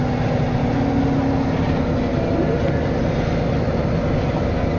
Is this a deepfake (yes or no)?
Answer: no